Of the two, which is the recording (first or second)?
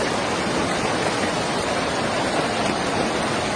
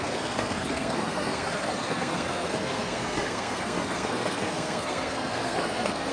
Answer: first